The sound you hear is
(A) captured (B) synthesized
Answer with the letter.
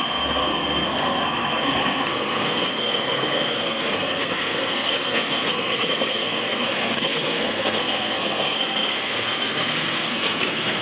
B